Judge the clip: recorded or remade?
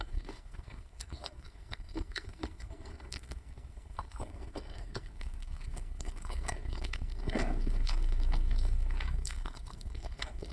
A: remade